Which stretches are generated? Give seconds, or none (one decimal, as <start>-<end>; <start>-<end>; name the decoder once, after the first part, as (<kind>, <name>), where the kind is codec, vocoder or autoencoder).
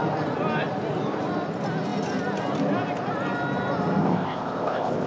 4.0-5.1 (codec, ZipCodec)